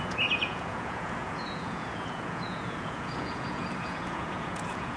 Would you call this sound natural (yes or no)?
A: no